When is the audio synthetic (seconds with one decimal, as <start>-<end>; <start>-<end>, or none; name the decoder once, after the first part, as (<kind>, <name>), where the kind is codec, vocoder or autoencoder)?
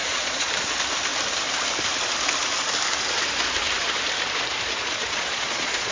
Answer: 0.0-0.5 (vocoder, Vocos); 5.0-5.9